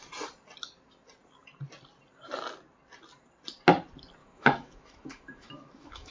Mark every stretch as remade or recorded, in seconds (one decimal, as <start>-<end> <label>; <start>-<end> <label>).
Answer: 0.0-4.2 recorded; 4.2-6.1 remade